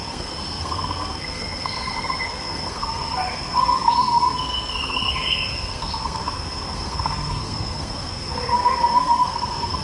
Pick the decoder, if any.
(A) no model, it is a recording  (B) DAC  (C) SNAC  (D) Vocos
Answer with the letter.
C